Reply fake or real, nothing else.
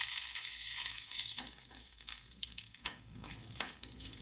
fake